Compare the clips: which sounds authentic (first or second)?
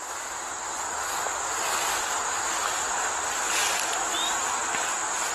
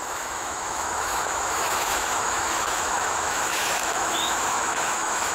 first